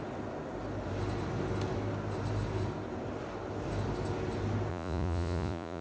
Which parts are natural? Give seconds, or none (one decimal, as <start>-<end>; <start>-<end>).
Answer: 0.0-4.7